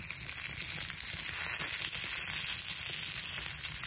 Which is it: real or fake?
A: real